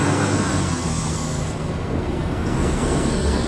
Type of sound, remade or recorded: remade